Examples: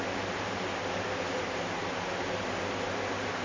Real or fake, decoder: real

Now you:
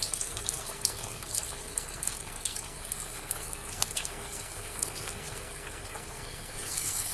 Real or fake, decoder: fake, codec, SNAC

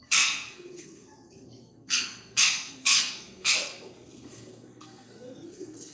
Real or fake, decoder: fake, codec, SNAC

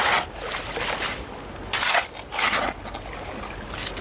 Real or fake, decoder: real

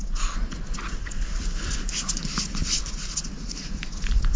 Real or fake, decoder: real